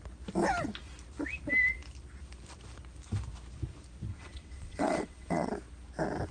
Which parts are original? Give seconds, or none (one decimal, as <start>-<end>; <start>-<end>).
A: 0.0-4.1; 5.5-6.3